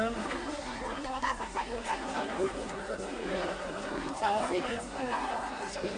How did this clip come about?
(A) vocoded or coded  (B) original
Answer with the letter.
A